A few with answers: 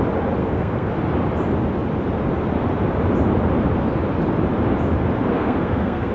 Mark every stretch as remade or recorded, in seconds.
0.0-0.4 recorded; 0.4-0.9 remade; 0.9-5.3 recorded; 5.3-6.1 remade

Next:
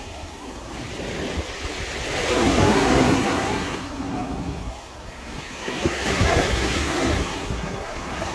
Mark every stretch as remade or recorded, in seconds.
0.0-0.7 remade; 0.7-2.3 recorded; 2.3-8.3 remade

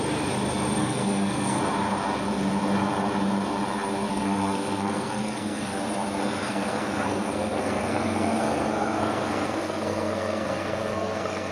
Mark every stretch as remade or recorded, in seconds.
0.0-0.8 recorded; 0.8-1.6 remade; 1.6-4.1 recorded; 4.1-5.8 remade; 5.8-6.2 recorded; 6.2-11.5 remade

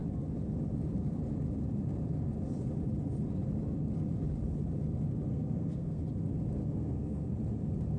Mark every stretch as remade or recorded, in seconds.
0.0-5.3 recorded; 5.3-6.0 remade; 6.0-6.6 recorded; 6.6-7.3 remade; 7.3-8.0 recorded